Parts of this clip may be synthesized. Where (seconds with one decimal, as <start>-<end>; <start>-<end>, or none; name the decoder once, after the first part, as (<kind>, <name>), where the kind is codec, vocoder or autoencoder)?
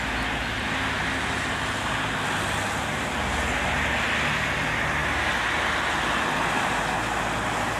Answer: none